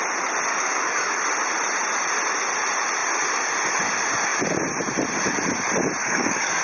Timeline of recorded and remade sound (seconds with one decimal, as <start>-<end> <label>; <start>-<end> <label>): 0.0-0.5 recorded; 0.5-1.2 remade; 1.2-6.0 recorded; 6.0-6.6 remade